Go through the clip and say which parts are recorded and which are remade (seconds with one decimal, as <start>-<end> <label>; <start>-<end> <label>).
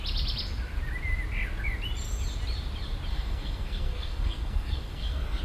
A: 0.0-3.1 recorded; 3.1-5.4 remade